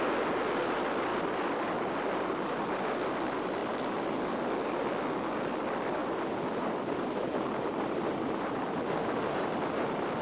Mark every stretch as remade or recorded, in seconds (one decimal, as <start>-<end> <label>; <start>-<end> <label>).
0.0-1.1 recorded; 1.1-1.9 remade; 1.9-3.6 recorded; 3.6-4.3 remade; 4.3-6.0 recorded; 6.0-10.2 remade